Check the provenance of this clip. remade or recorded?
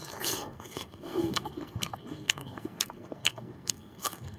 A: remade